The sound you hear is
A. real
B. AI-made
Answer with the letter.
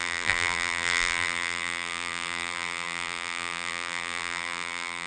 B